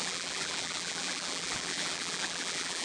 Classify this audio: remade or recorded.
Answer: remade